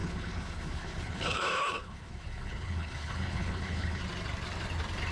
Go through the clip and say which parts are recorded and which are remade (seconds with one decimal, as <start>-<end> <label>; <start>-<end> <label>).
0.0-4.0 remade; 4.0-5.1 recorded